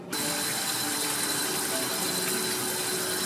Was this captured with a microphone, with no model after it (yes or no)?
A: yes